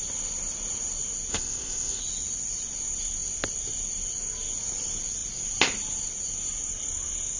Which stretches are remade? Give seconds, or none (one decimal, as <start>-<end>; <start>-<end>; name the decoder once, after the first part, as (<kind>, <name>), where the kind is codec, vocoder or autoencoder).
1.3-2.0 (codec, ZipCodec)